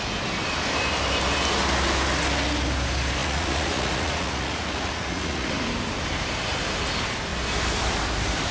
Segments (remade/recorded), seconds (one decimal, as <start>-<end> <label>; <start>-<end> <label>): 0.0-3.2 recorded; 3.2-5.5 remade; 5.5-8.5 recorded